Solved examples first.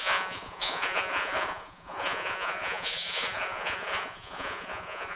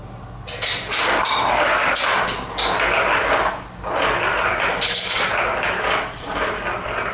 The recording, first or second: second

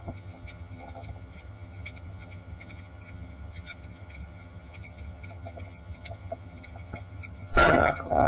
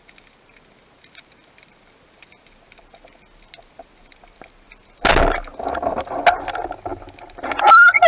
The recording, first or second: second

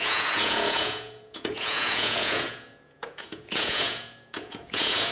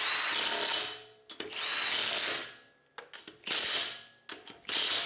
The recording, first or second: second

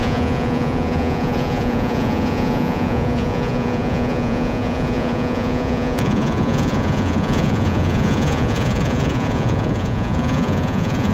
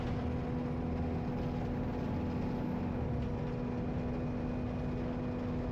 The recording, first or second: second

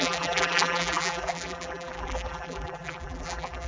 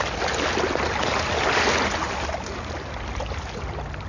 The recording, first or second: second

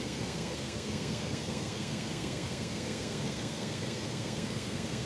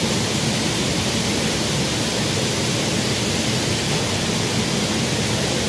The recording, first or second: second